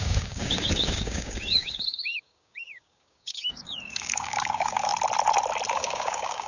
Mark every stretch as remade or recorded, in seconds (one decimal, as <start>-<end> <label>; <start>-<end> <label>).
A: 0.0-4.9 remade; 4.9-5.7 recorded; 5.7-6.5 remade